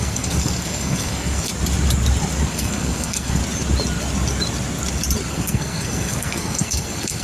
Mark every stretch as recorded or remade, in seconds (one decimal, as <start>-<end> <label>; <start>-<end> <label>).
0.0-1.5 remade; 1.5-2.5 recorded; 2.5-3.4 remade; 3.4-5.3 recorded; 5.3-7.2 remade

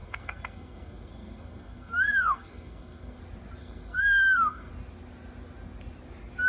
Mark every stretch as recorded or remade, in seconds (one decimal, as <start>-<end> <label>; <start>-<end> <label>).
0.0-3.2 remade; 3.2-3.6 recorded; 3.6-4.7 remade; 4.7-6.5 recorded

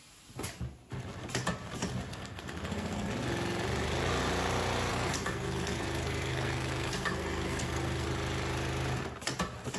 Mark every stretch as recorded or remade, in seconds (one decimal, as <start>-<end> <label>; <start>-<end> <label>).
0.0-2.1 recorded; 2.1-3.1 remade; 3.1-4.9 recorded; 4.9-8.1 remade; 8.1-9.8 recorded

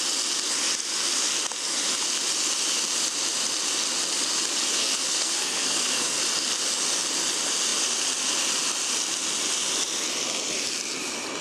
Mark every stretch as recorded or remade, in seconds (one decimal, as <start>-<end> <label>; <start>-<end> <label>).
0.0-4.7 recorded; 4.7-6.2 remade; 6.2-11.4 recorded

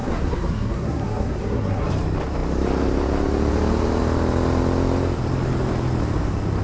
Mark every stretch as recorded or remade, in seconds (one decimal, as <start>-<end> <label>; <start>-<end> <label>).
0.0-1.9 remade; 1.9-6.6 recorded